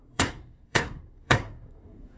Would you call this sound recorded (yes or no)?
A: no